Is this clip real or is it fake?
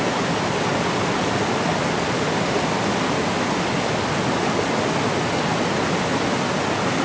real